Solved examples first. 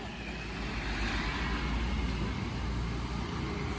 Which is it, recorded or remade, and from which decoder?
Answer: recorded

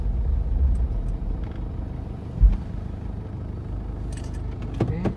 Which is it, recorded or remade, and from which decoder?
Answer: recorded